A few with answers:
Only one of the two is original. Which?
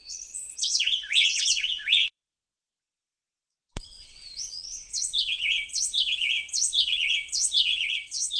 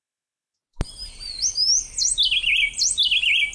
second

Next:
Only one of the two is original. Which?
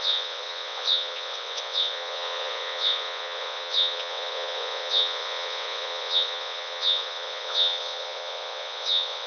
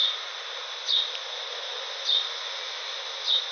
second